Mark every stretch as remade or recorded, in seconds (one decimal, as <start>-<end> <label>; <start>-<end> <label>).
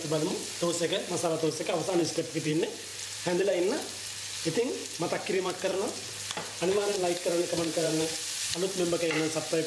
0.0-2.0 recorded; 2.0-2.5 remade; 2.5-2.9 recorded; 2.9-4.0 remade; 4.0-4.8 recorded; 4.8-8.4 remade; 8.4-9.7 recorded